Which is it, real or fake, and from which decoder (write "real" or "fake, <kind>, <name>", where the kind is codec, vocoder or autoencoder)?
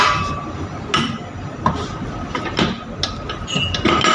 real